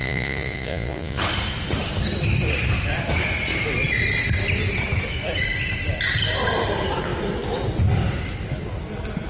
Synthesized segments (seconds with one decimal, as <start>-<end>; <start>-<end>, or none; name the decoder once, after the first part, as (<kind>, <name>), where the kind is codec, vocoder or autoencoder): 0.0-1.2 (vocoder, Vocos)